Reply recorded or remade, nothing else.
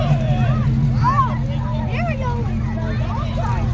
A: recorded